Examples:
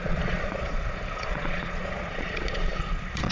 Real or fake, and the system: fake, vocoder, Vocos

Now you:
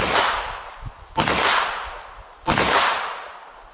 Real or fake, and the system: real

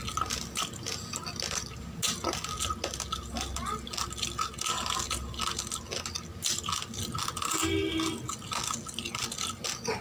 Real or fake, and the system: real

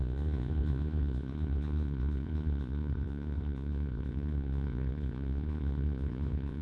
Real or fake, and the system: fake, vocoder, Vocos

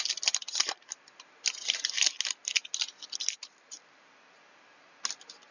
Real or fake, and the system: real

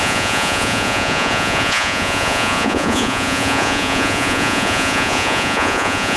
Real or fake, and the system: fake, vocoder, Vocos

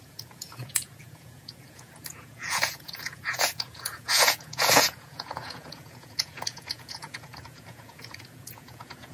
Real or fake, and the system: fake, vocoder, Vocos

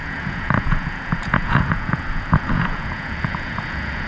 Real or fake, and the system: fake, vocoder, Vocos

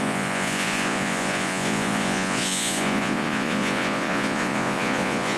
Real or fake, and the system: fake, vocoder, Vocos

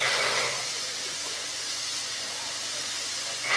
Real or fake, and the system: fake, vocoder, Vocos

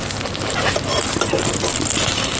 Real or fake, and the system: real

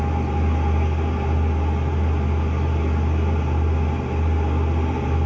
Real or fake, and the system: real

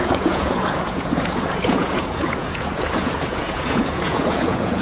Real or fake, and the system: fake, vocoder, Vocos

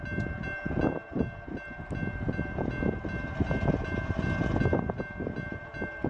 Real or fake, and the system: real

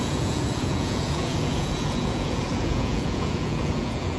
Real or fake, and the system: fake, vocoder, Vocos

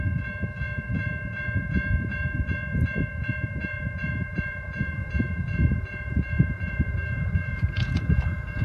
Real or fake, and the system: fake, vocoder, Vocos